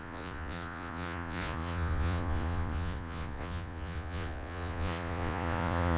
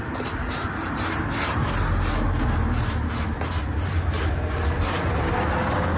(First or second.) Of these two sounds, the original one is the second